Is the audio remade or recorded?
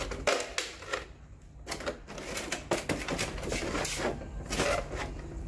recorded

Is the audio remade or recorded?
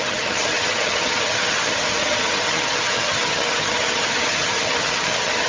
remade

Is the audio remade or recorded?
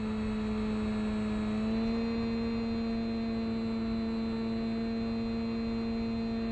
recorded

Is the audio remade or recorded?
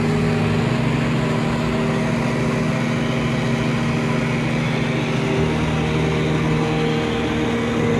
recorded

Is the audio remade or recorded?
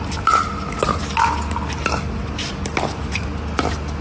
recorded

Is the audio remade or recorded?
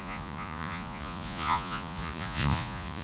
remade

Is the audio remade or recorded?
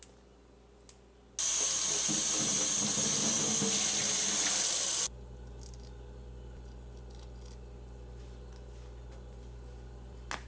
recorded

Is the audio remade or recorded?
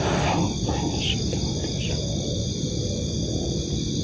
recorded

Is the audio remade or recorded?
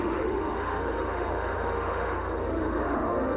remade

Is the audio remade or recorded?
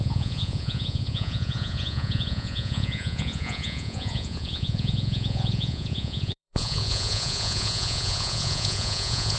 remade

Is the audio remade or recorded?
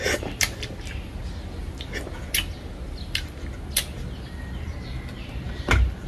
recorded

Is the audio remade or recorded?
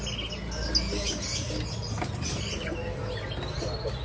recorded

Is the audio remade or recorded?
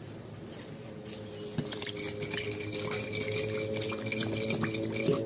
recorded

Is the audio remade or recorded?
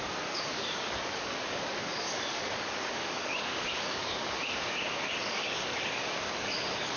remade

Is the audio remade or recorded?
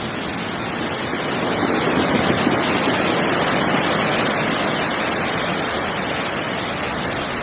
recorded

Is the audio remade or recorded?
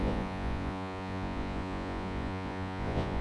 remade